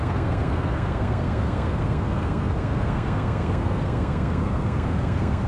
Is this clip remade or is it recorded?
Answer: remade